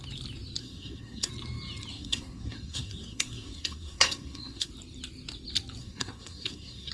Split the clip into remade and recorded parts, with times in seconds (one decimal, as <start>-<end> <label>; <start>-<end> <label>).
0.0-0.6 recorded; 0.6-1.3 remade; 1.3-1.9 recorded; 1.9-4.7 remade; 4.7-5.8 recorded; 5.8-6.9 remade